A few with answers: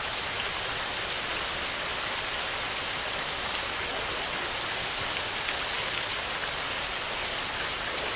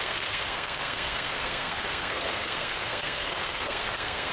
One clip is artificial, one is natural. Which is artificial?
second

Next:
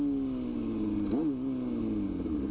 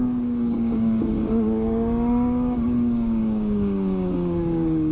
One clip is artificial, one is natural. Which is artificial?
second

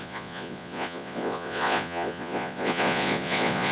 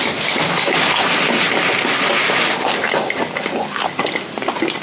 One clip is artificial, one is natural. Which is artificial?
first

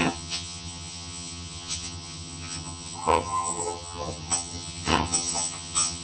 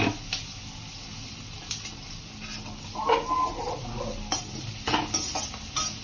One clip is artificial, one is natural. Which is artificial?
first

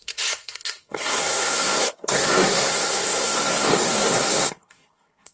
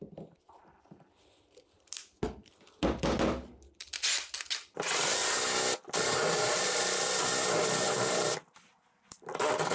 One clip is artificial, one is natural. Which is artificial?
first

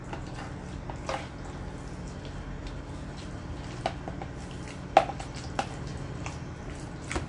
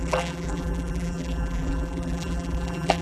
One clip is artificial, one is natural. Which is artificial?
second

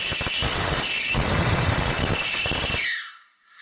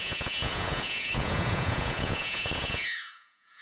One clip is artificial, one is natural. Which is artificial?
second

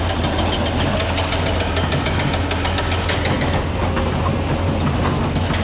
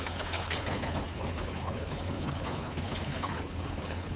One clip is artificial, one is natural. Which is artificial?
second